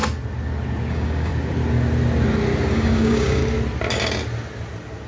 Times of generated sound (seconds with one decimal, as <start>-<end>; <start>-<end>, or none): 0.9-1.3; 2.7-3.4